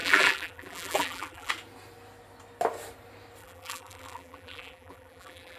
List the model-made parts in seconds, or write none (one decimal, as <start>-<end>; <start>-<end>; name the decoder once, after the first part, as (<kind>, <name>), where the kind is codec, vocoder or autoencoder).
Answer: 0.0-1.5 (vocoder, BigVGAN v2); 3.4-5.6